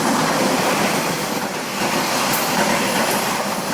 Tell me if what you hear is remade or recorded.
recorded